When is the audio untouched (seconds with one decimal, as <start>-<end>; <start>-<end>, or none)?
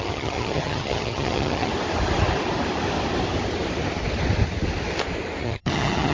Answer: 1.7-5.4